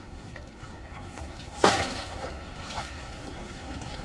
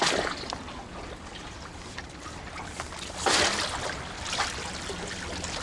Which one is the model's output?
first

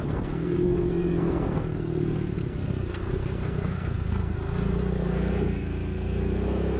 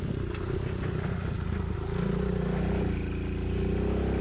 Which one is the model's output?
first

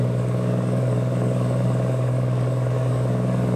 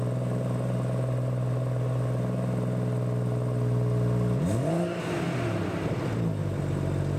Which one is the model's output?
first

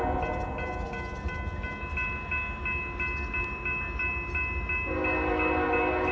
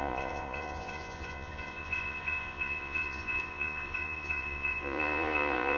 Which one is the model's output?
second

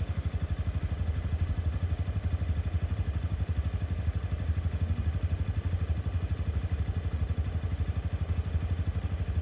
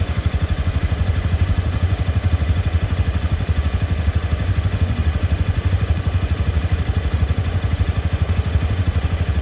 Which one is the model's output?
second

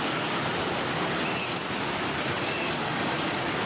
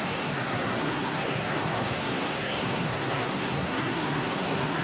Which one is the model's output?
second